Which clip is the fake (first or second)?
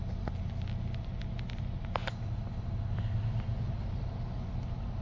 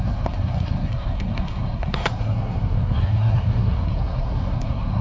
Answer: second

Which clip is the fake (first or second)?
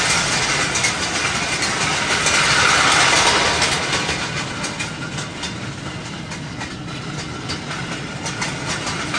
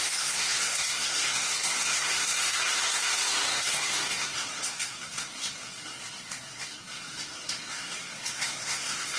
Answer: second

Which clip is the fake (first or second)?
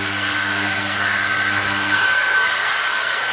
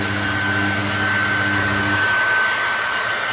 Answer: first